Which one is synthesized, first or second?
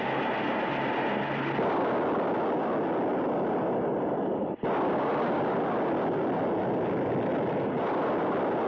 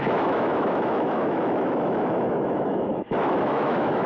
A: second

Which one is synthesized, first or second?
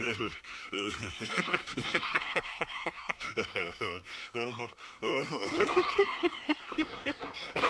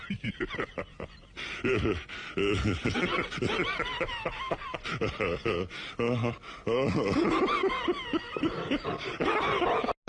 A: first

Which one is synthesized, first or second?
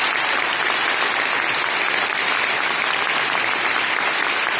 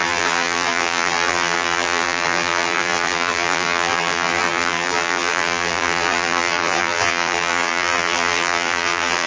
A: second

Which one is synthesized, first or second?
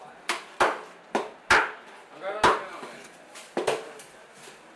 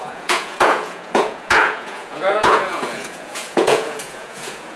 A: second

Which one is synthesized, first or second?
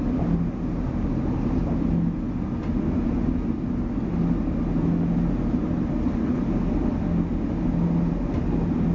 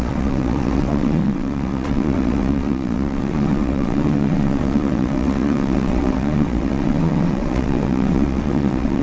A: second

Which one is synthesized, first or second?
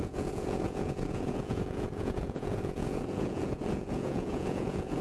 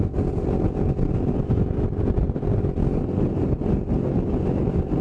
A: first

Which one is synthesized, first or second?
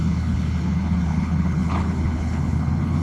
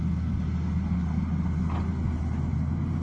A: first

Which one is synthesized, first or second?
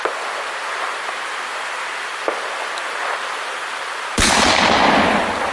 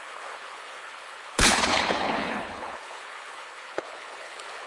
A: second